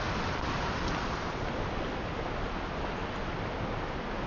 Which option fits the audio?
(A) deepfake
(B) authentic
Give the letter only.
B